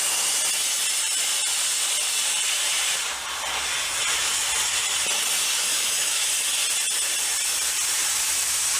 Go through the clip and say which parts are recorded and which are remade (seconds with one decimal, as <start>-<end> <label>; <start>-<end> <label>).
0.0-5.7 recorded; 5.7-6.3 remade; 6.3-8.8 recorded